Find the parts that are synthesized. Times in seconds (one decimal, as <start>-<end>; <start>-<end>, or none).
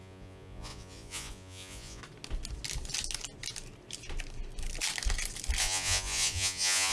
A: 0.0-2.0; 5.6-6.9